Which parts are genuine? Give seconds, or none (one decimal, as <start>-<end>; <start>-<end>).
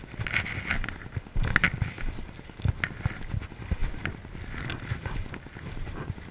0.0-6.3